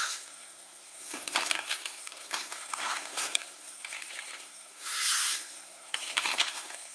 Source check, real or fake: fake